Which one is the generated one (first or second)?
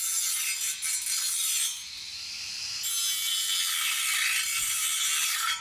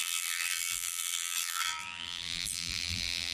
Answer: second